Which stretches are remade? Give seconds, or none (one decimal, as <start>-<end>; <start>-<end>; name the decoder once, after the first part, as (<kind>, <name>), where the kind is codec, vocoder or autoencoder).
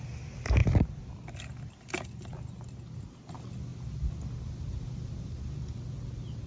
none